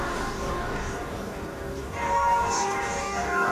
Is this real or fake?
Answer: fake